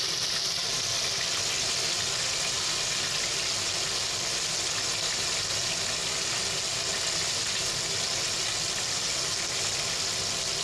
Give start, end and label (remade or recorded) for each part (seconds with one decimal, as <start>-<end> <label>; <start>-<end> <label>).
0.0-10.6 recorded